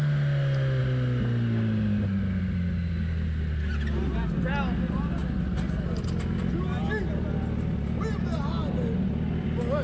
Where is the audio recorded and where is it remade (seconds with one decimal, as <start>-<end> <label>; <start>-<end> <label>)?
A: 0.0-9.8 recorded